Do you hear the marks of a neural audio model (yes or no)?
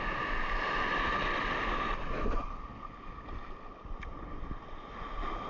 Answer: no